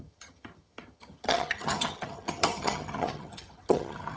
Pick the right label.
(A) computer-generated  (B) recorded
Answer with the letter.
A